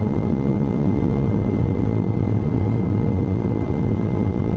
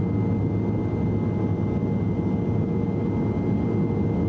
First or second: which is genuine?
second